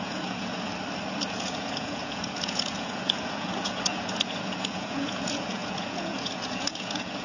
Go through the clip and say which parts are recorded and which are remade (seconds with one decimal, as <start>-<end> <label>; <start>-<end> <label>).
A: 0.0-0.7 remade; 0.7-1.3 recorded; 1.3-7.2 remade